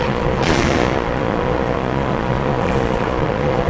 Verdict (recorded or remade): remade